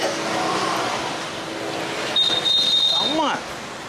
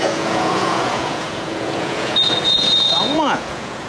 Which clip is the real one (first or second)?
first